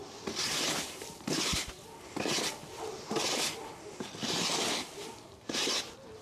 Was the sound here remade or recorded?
recorded